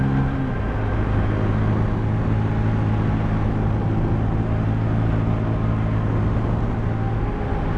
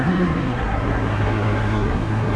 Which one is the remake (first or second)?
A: second